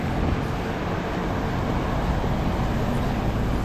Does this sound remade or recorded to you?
recorded